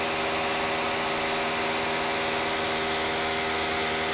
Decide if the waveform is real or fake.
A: real